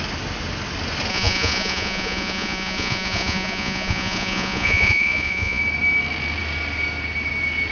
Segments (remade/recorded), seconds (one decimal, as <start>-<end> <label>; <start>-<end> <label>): 0.0-1.1 recorded; 1.1-5.6 remade; 5.6-7.7 recorded